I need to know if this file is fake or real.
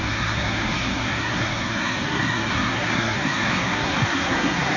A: fake